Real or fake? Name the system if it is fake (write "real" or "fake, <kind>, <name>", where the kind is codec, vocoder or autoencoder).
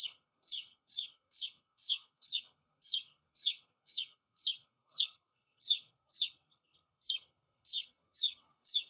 fake, codec, SNAC